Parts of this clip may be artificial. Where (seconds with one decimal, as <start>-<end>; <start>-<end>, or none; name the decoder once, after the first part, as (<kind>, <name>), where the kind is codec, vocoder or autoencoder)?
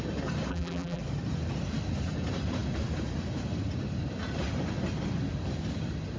0.5-1.0 (vocoder, BigVGAN v2)